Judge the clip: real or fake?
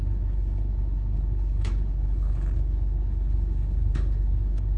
fake